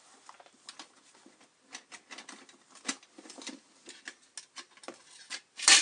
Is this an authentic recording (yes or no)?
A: yes